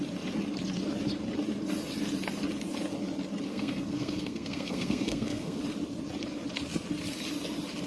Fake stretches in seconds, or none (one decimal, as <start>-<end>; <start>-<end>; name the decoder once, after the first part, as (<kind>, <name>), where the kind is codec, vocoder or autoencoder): 3.5-5.6 (codec, SNAC)